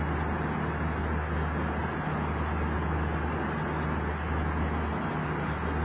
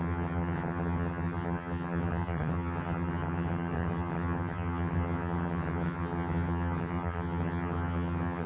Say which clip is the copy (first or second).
second